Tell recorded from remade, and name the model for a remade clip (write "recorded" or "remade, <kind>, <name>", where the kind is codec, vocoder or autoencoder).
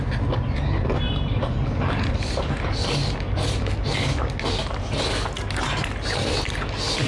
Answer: recorded